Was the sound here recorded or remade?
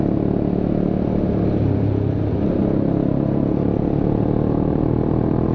recorded